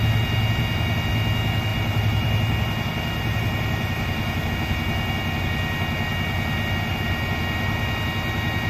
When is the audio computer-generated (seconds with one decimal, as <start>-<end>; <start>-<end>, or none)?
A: 1.7-4.5

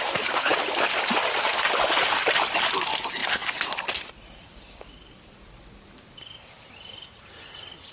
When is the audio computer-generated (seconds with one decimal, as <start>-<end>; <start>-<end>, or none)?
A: 3.2-6.0